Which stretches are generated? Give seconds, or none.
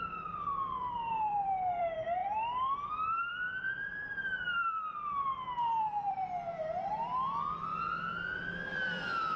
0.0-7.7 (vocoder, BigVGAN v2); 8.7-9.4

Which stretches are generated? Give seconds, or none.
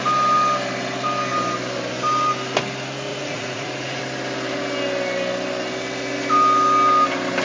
3.1-4.0 (vocoder, Vocos)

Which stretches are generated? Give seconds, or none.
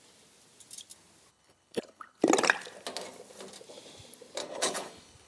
1.3-2.2 (codec, HILCodec); 4.4-5.3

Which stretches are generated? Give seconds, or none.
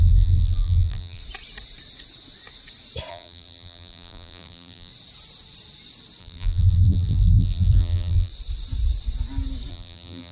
0.0-1.2 (vocoder, BigVGAN v2); 3.1-4.9; 6.2-8.3; 9.7-10.3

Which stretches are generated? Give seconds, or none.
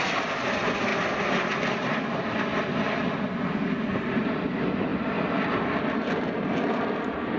none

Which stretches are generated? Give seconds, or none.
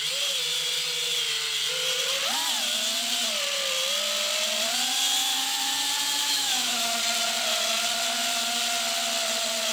5.2-5.7 (autoencoder, DAC-VAE); 6.2-7.0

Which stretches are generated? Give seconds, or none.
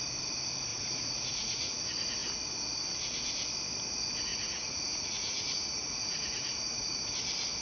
0.7-1.8 (vocoder, Vocos); 4.3-7.0